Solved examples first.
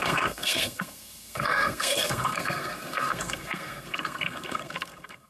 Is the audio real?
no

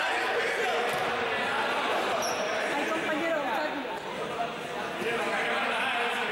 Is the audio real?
yes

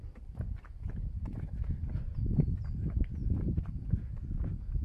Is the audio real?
yes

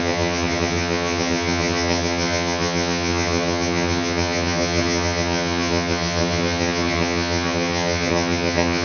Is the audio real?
no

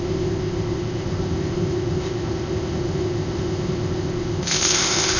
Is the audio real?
no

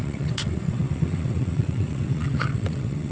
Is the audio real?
no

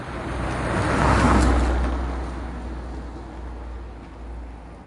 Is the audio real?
yes